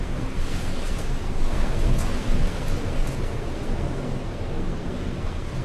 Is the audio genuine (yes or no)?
no